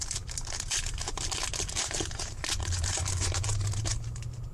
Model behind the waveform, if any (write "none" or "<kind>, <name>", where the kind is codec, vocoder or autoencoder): vocoder, BigVGAN v2